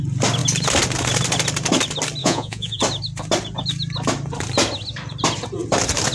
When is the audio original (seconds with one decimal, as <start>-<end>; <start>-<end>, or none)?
0.0-2.2; 2.8-6.1